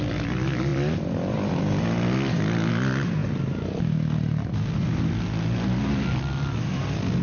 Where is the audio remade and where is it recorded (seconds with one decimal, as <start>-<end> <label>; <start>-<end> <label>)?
0.0-7.2 recorded